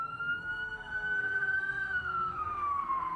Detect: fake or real fake